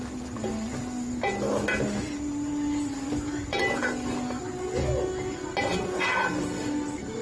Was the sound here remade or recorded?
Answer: recorded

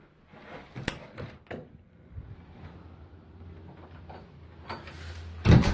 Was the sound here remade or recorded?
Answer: recorded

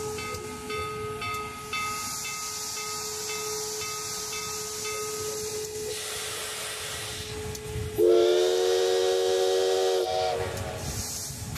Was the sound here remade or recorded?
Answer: recorded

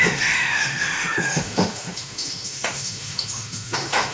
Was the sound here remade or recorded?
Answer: remade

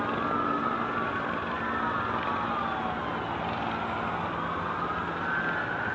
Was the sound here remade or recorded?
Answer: recorded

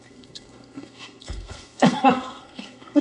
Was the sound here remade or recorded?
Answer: remade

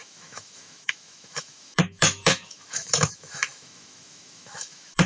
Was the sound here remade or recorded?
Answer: remade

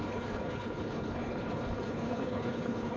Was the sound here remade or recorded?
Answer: remade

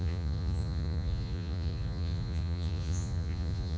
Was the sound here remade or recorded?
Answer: remade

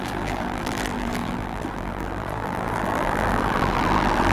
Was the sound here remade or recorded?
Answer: remade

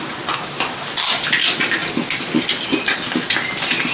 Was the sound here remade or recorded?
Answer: recorded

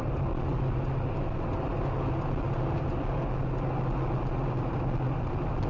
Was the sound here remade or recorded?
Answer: recorded